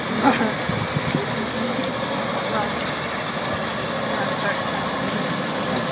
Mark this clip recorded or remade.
recorded